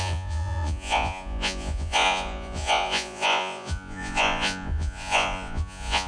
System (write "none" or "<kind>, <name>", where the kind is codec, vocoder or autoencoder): vocoder, Vocos